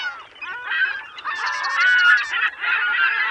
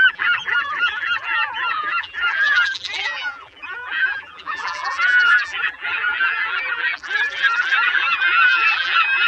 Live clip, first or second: first